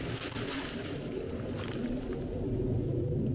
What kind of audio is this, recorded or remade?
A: recorded